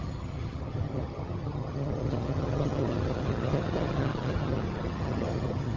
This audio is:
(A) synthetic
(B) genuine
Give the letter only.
A